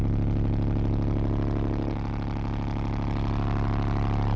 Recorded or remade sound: recorded